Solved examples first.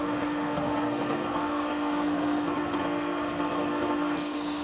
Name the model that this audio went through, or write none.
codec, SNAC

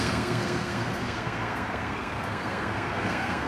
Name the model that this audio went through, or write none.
codec, SNAC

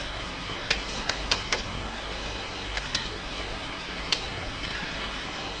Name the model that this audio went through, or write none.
codec, SNAC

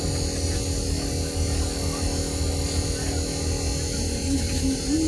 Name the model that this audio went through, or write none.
none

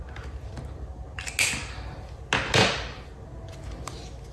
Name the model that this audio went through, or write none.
none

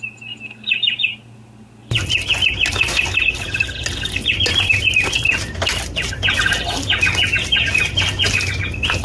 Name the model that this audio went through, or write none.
none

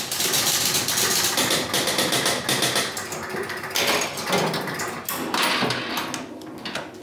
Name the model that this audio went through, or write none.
none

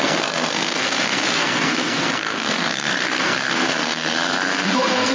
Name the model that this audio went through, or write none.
codec, SNAC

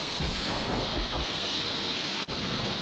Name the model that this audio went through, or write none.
codec, SNAC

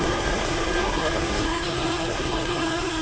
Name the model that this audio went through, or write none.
codec, SNAC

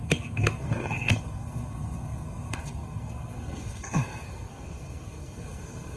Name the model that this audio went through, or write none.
codec, SNAC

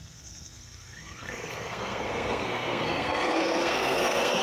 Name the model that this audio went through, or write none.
codec, SNAC